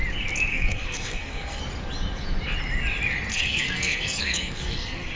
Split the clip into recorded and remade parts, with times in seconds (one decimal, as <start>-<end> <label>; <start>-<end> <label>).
0.0-0.5 recorded; 0.5-1.6 remade; 1.6-3.3 recorded; 3.3-5.2 remade